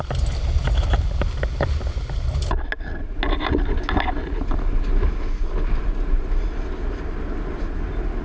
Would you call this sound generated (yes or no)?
no